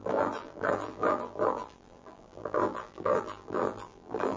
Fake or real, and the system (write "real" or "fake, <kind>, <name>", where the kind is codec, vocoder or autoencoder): fake, vocoder, BigVGAN v2